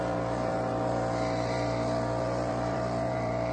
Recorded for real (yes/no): no